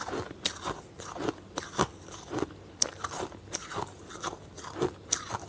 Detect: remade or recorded recorded